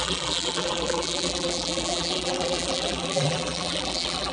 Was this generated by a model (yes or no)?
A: yes